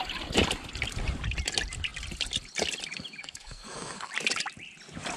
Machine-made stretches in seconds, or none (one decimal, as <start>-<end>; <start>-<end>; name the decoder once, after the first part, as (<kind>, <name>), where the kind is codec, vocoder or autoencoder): 3.2-4.1 (codec, SNAC)